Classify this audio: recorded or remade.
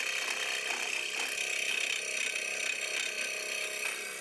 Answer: recorded